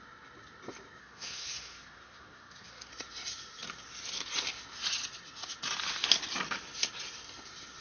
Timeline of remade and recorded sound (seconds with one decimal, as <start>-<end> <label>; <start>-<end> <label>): 0.0-1.0 recorded; 1.0-2.9 remade; 2.9-7.8 recorded